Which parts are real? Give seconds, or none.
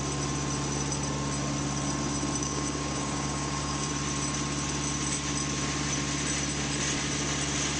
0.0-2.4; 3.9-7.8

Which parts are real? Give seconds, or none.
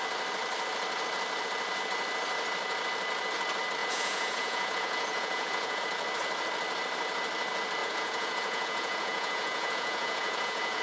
0.0-3.8; 5.8-7.8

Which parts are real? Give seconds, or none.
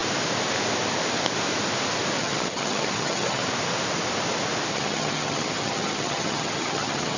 0.0-2.2; 3.4-4.7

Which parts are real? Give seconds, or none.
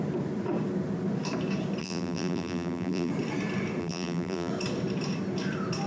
0.0-1.8; 3.1-3.8; 4.5-5.9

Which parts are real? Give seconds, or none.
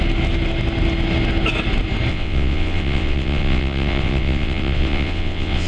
0.0-2.1